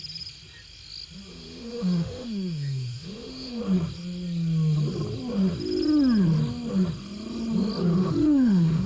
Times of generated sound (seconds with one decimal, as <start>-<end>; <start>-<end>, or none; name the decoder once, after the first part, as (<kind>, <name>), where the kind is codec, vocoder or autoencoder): 1.3-3.6 (autoencoder, DAC-VAE); 7.8-8.9